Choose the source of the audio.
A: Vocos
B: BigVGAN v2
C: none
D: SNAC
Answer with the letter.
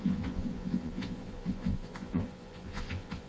A